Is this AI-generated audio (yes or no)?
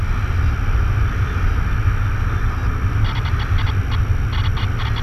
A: no